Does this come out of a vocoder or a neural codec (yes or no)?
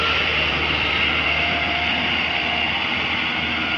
yes